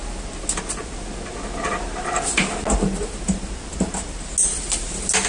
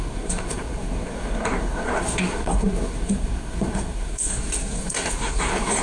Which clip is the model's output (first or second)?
second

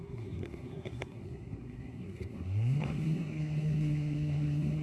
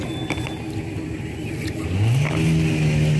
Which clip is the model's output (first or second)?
first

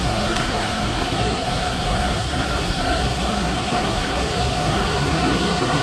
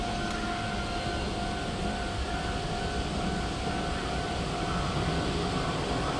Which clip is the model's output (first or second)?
first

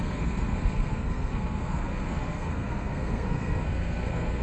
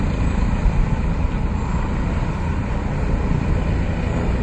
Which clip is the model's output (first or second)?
first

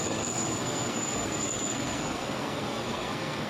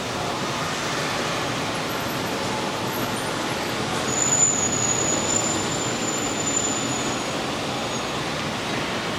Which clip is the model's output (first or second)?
first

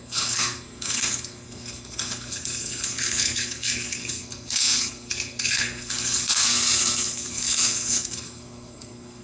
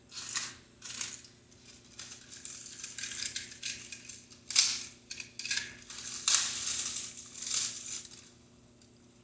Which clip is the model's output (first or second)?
first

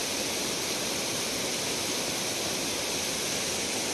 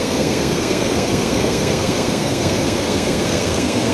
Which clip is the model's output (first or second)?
second